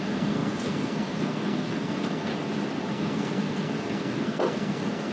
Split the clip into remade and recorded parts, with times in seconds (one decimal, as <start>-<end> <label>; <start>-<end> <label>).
0.0-2.3 remade; 2.3-2.9 recorded; 2.9-5.1 remade